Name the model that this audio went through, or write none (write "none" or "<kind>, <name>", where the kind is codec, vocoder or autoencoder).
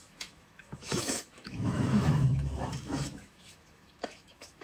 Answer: autoencoder, DAC-VAE